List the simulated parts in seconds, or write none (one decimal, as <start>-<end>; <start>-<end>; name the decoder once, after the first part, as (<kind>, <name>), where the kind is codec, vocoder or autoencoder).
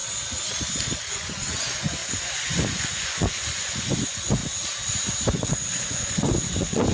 1.1-4.4 (vocoder, Vocos); 5.4-6.9